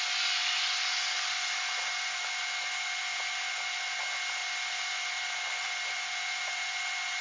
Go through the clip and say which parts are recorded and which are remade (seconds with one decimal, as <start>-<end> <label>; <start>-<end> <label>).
0.0-0.4 recorded; 0.4-3.8 remade; 3.8-4.4 recorded; 4.4-6.8 remade; 6.8-7.2 recorded